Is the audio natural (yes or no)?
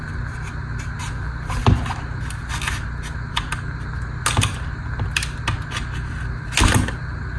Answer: yes